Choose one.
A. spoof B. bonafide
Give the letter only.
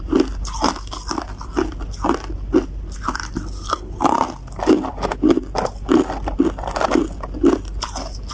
B